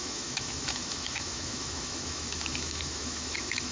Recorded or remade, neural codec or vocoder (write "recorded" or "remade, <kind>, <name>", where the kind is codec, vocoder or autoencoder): remade, autoencoder, DAC-VAE